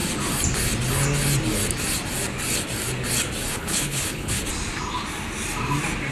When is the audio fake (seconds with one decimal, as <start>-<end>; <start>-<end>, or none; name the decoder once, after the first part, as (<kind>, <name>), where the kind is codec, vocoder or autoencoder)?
3.5-4.4 (codec, HILCodec)